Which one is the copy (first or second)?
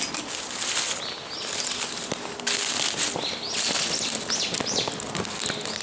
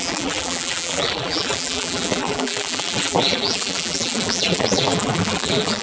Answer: second